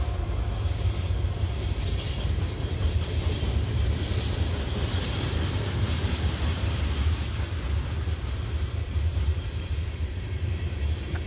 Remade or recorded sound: remade